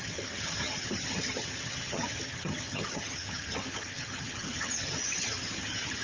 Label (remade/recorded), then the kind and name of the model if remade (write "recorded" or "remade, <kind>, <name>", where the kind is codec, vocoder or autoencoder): remade, vocoder, HiFi-GAN